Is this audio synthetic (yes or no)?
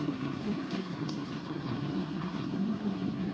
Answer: yes